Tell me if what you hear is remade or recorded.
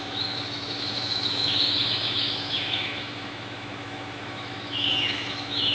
remade